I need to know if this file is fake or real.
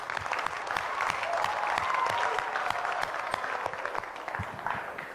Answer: real